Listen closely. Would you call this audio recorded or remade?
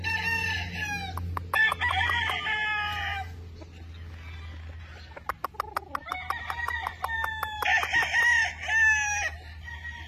recorded